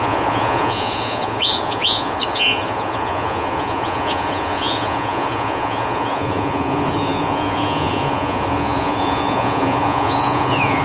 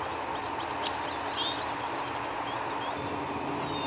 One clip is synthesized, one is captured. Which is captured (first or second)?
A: second